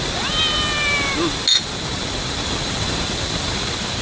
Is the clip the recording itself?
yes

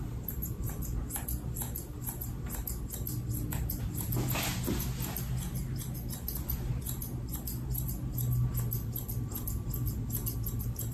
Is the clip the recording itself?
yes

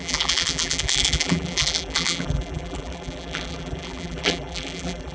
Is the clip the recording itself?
no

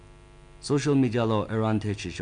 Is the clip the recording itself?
yes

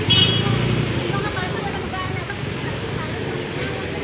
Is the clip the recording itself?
yes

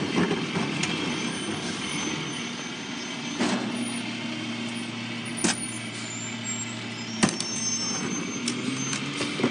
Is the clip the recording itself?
yes